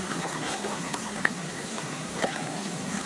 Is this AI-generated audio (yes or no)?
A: yes